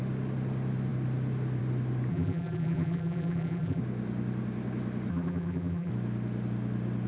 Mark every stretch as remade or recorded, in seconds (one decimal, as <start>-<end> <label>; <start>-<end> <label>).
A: 0.0-2.1 recorded; 2.1-3.8 remade; 3.8-5.1 recorded; 5.1-5.9 remade; 5.9-7.1 recorded